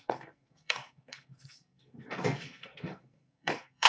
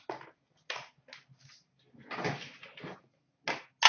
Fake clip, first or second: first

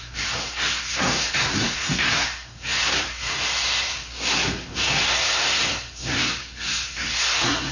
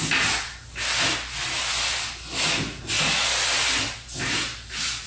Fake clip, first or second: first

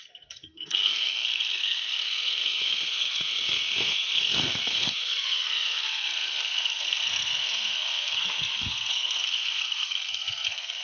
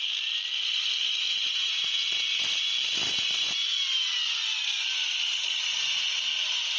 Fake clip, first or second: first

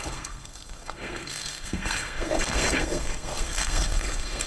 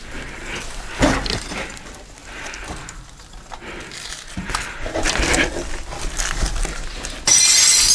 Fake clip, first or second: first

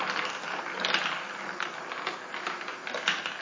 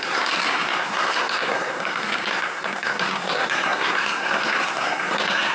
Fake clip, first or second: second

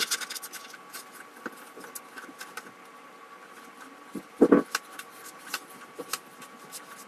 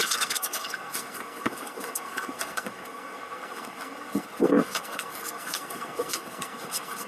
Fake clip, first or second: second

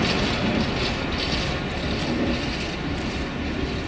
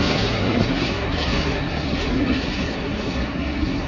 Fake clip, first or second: second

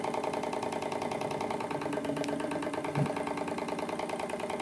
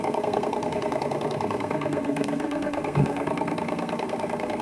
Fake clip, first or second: second